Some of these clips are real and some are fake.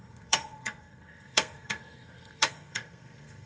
fake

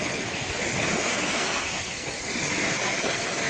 fake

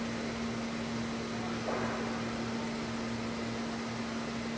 real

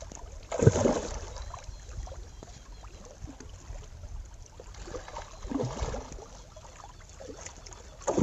real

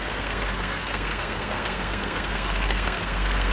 fake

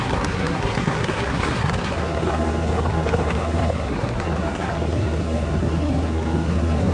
fake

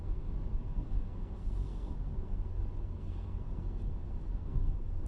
fake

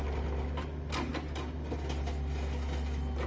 real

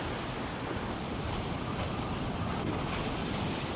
real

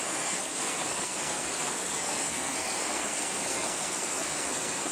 fake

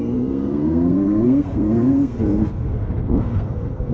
fake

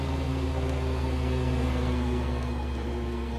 fake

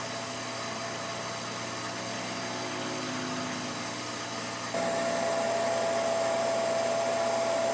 real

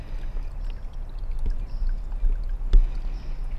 real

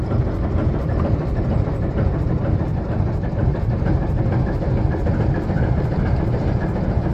real